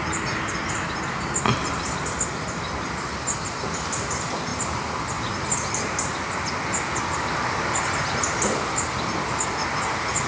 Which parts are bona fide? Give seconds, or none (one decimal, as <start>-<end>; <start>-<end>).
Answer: 4.5-5.7